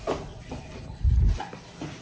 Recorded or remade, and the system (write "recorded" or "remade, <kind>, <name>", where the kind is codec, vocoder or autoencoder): recorded